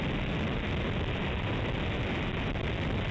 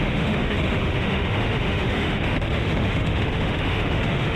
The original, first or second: first